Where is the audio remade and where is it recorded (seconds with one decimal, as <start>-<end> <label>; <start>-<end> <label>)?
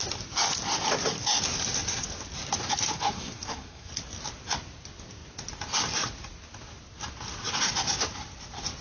0.0-2.9 recorded; 2.9-3.9 remade; 3.9-8.8 recorded